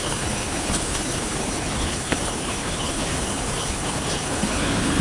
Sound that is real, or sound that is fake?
fake